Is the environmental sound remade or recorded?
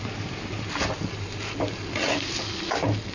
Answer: recorded